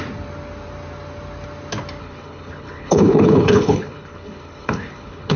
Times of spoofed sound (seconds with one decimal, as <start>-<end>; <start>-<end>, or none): 2.0-5.4